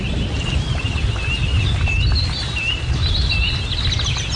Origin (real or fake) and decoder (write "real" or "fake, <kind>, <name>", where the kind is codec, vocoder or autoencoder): real